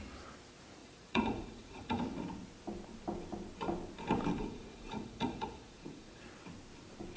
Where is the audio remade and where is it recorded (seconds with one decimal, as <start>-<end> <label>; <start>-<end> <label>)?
0.0-0.8 recorded; 0.8-2.0 remade; 2.0-4.4 recorded; 4.4-6.2 remade; 6.2-7.2 recorded